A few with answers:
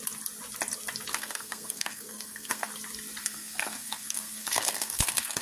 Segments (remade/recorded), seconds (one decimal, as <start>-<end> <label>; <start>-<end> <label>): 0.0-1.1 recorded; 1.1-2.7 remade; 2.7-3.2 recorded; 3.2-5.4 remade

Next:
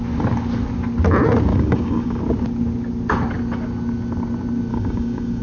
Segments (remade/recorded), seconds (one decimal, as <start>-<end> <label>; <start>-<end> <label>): 0.0-1.5 recorded; 1.5-2.2 remade; 2.2-4.7 recorded; 4.7-5.4 remade

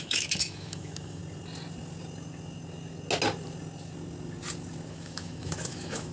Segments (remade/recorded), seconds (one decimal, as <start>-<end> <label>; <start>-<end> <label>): 0.0-1.2 remade; 1.2-4.9 recorded; 4.9-6.1 remade

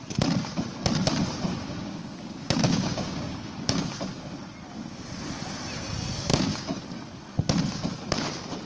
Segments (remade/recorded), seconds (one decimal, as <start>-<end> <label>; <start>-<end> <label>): 0.0-1.5 recorded; 1.5-4.0 remade; 4.0-6.3 recorded; 6.3-6.8 remade; 6.8-8.7 recorded